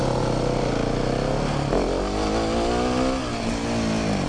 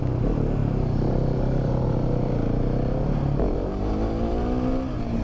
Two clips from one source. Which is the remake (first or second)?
second